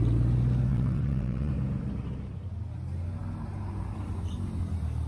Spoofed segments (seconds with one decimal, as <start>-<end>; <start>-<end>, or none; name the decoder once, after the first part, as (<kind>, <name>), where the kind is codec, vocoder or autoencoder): 0.7-1.5 (vocoder, WaveNeXt)